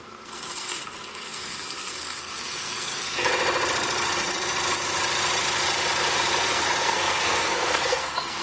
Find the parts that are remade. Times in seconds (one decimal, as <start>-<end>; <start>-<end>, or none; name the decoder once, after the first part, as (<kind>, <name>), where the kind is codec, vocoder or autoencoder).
0.0-3.3 (codec, SNAC); 6.4-8.4